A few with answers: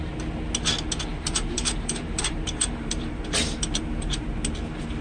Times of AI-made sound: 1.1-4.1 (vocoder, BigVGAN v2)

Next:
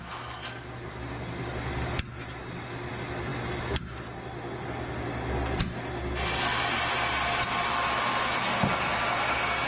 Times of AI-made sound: none